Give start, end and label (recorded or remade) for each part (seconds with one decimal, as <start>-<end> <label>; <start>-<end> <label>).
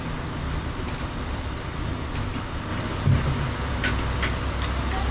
0.0-5.1 recorded